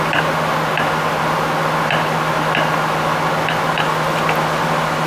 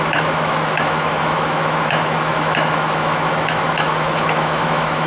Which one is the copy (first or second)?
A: second